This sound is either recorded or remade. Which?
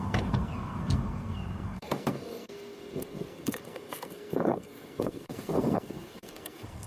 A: remade